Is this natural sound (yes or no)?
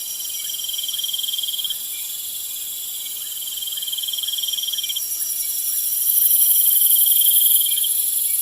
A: no